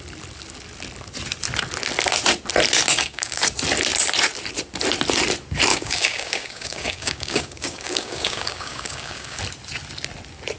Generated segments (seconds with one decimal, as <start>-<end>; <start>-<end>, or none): 2.9-3.4; 5.7-9.4